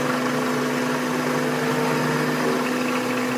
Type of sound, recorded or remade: recorded